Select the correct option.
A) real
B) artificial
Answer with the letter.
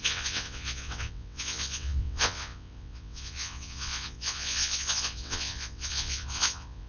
B